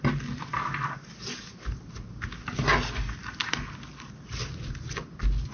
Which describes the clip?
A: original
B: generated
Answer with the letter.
A